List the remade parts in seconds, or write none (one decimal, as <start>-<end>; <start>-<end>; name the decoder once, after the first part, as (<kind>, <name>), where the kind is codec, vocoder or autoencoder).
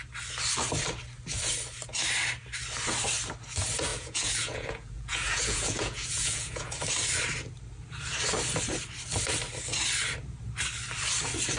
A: 3.9-6.7 (vocoder, Vocos)